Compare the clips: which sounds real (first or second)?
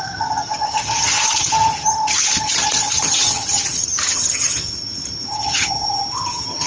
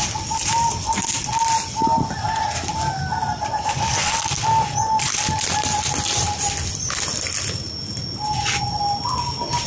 second